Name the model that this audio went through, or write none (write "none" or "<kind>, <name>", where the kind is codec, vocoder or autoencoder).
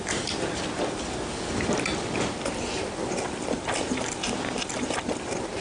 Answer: none